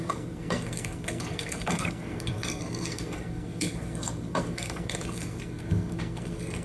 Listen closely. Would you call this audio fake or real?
fake